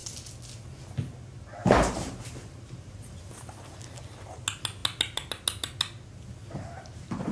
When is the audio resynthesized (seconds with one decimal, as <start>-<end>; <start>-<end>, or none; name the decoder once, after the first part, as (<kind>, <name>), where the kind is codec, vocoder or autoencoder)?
1.6-3.3 (vocoder, BigVGAN v2)